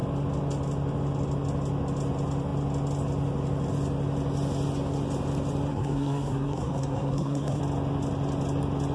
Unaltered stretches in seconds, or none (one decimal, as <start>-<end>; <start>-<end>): 0.0-5.7; 7.6-8.9

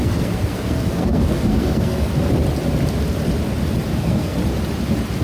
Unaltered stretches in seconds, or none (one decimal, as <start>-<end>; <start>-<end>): 2.1-4.0; 4.4-5.2

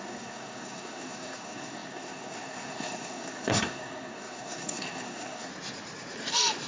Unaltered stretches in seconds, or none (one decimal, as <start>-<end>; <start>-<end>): 5.5-6.7

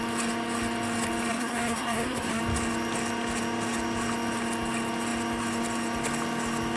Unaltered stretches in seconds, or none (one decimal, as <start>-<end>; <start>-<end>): 0.0-1.3; 2.4-6.8

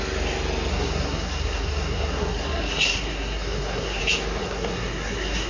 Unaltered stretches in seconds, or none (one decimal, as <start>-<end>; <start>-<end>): 0.0-0.7; 4.0-4.4